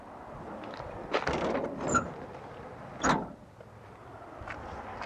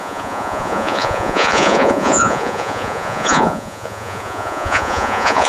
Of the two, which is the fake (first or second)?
second